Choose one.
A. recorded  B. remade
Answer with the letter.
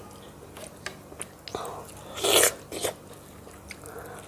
A